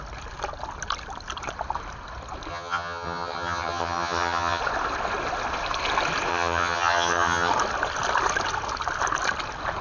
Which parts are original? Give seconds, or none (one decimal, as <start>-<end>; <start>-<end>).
0.0-2.5; 4.6-6.3; 7.5-9.8